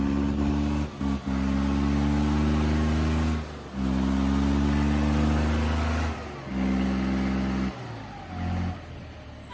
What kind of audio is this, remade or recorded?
recorded